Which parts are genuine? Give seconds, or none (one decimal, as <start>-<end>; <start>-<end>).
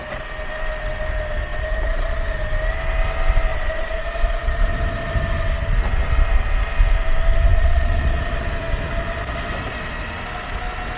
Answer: 0.0-3.5; 4.0-7.5; 8.3-11.0